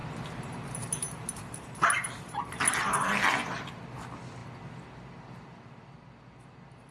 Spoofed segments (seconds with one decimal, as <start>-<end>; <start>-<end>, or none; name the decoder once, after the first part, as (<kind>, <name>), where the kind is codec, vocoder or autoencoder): 0.0-2.4 (vocoder, BigVGAN v2)